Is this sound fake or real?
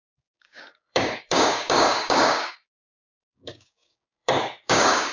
fake